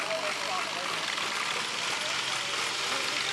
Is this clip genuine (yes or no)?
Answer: yes